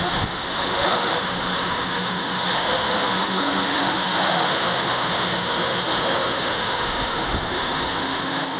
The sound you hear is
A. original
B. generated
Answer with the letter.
B